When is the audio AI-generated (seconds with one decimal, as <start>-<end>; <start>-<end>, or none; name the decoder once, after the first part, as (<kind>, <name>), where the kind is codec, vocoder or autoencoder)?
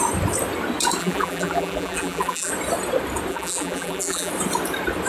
1.0-2.5 (vocoder, BigVGAN v2); 3.3-4.3